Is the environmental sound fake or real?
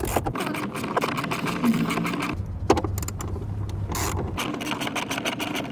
real